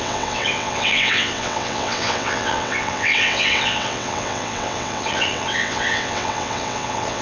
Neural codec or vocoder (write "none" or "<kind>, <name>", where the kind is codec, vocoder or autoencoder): vocoder, WaveNeXt